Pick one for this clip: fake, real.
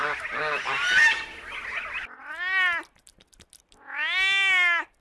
real